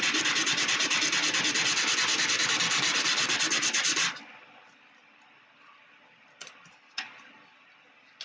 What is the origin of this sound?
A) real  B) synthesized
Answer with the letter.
A